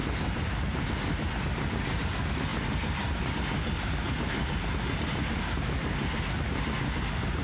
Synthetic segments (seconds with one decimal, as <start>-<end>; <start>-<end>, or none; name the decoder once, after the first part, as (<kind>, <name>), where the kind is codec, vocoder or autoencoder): none